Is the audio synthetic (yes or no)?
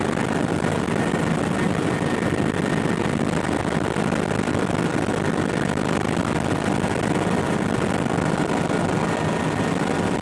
no